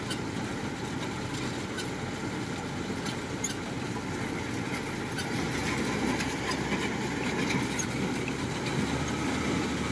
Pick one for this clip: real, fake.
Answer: real